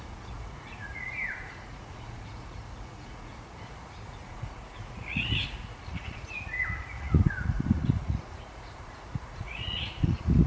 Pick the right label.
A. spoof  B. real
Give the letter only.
A